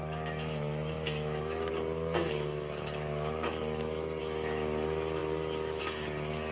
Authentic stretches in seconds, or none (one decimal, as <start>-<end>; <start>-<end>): 1.7-2.2; 4.2-6.5